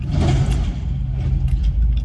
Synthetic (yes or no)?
no